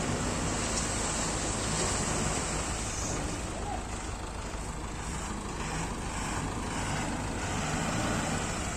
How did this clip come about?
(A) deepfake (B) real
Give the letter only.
B